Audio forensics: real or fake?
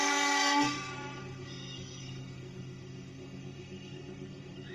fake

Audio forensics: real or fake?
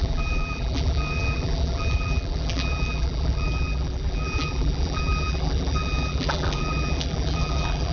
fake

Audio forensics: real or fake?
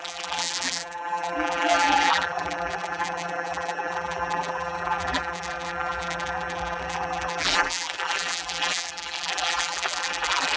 fake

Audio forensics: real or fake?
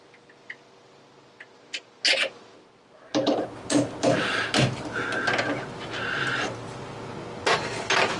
real